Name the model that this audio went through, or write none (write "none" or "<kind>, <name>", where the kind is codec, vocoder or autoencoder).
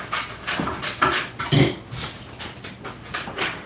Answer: none